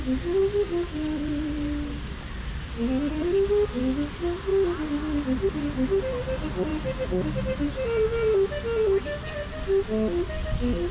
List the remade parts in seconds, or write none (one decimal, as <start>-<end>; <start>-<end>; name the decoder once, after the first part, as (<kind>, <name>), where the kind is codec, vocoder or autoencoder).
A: 0.4-3.8 (vocoder, BigVGAN v2)